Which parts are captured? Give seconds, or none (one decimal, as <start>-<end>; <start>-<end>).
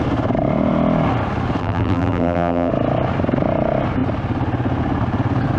0.0-1.6; 2.7-5.6